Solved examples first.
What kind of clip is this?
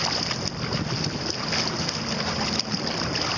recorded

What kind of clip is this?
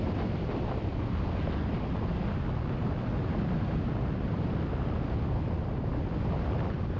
recorded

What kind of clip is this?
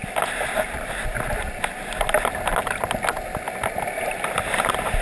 recorded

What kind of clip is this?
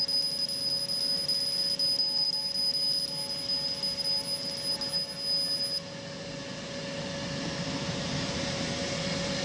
recorded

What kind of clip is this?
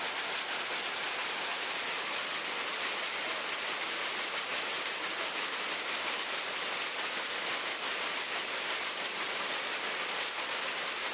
recorded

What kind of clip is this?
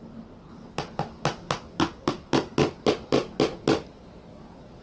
recorded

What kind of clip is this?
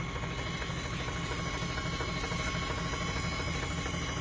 recorded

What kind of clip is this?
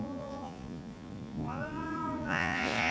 remade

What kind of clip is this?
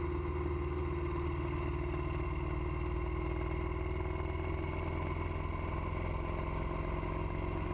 recorded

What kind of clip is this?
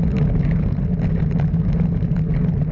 recorded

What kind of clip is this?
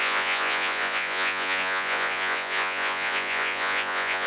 remade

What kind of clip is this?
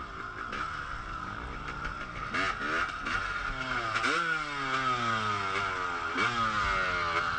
recorded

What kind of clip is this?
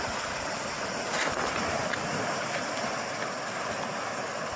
recorded